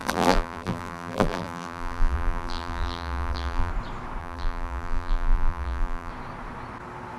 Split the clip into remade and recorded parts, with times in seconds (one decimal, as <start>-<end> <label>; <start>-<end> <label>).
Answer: 0.0-3.7 remade; 3.7-4.2 recorded; 4.2-6.1 remade; 6.1-7.2 recorded